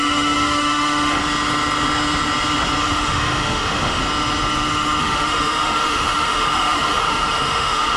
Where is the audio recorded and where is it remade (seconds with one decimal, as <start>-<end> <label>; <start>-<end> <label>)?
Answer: 0.0-1.2 remade; 1.2-2.8 recorded; 2.8-4.0 remade; 4.0-5.0 recorded; 5.0-8.0 remade